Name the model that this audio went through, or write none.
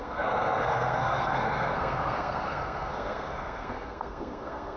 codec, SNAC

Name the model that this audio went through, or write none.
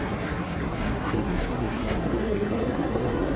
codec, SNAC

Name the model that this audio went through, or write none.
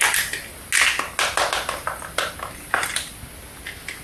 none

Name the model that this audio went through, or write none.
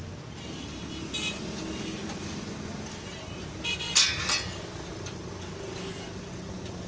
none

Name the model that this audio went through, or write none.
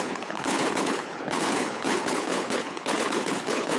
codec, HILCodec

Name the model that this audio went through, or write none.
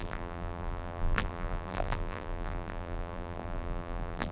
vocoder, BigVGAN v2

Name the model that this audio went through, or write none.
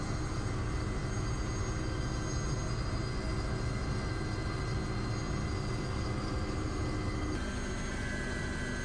none